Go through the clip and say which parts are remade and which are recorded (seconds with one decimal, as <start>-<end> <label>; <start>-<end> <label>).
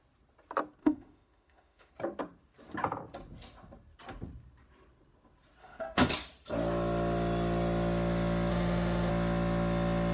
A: 0.0-0.8 recorded; 0.8-1.9 remade; 1.9-5.6 recorded; 5.6-6.1 remade; 6.1-8.5 recorded; 8.5-9.1 remade; 9.1-10.1 recorded